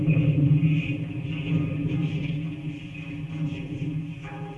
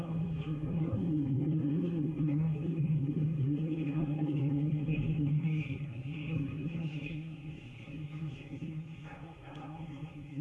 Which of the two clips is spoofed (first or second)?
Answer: second